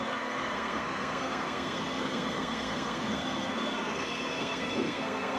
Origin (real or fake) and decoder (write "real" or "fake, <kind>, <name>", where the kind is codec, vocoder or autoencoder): fake, codec, SNAC